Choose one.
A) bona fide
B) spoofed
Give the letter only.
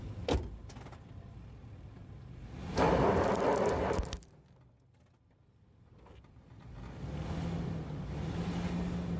A